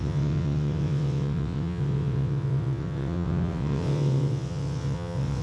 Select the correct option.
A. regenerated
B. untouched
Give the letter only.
A